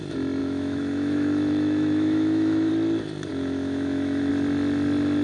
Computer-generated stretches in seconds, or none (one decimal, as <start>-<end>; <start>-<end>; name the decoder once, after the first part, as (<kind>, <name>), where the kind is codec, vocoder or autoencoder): 0.4-2.7 (autoencoder, DAC-VAE); 3.3-4.3

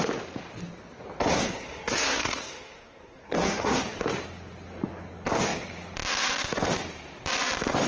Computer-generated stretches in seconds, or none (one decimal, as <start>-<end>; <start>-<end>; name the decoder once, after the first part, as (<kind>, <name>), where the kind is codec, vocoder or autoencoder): 1.3-3.8 (codec, SNAC)

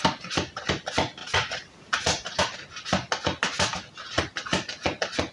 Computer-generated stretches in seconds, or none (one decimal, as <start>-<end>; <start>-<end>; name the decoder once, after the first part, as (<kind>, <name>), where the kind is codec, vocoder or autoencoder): 1.2-2.4 (vocoder, BigVGAN v2)

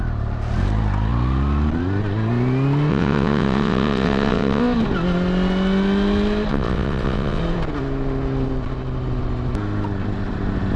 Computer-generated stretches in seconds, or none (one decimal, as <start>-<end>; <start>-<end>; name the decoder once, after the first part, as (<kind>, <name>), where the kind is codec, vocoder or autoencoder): 2.9-4.6 (vocoder, WaveNeXt); 6.5-7.4

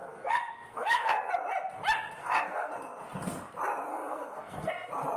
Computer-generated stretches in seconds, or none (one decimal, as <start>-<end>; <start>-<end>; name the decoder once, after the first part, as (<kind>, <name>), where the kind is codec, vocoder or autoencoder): 0.0-1.3 (codec, SNAC); 2.2-2.7; 3.9-4.7

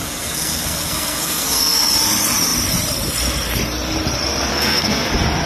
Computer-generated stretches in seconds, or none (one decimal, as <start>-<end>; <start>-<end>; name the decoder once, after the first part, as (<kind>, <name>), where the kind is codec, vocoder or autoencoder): 0.0-1.9 (codec, SNAC); 4.5-5.1

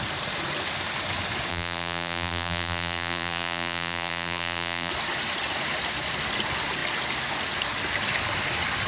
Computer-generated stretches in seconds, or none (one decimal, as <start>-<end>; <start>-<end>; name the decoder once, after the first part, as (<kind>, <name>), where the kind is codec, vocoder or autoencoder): 1.5-4.9 (vocoder, BigVGAN v2)

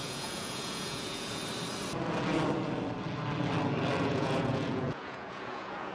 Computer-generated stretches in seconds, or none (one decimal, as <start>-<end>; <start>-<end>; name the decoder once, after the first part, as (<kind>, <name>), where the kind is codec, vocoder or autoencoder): 0.0-1.4 (vocoder, Vocos); 4.0-5.9